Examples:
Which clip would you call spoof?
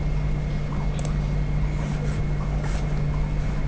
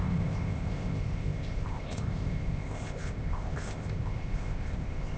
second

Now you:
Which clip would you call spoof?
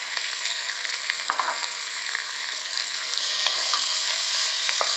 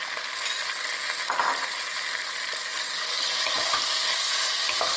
first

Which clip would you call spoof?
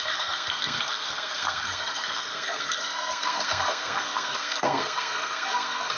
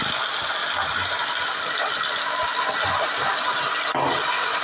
first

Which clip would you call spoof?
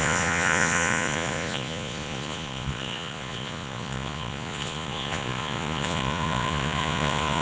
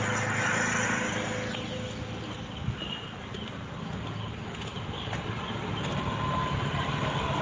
first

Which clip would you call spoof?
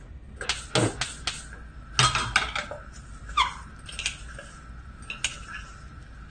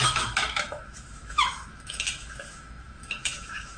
second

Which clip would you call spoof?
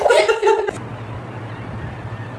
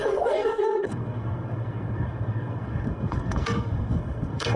second